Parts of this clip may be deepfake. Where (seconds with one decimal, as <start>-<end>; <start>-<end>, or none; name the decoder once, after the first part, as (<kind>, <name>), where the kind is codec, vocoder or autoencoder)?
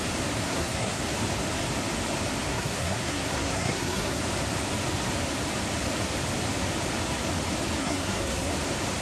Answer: 0.4-1.0 (codec, SNAC); 2.5-4.2; 7.8-8.5